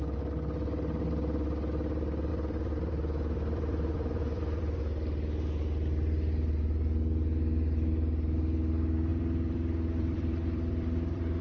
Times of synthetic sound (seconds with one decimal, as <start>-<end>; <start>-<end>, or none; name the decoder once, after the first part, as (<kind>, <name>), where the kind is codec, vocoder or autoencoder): 2.3-4.8 (vocoder, BigVGAN v2); 9.1-11.4